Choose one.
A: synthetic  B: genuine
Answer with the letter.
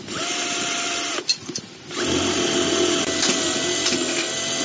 B